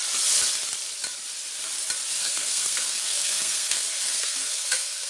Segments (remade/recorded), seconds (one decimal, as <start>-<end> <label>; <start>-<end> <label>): 0.0-2.2 recorded; 2.2-5.1 remade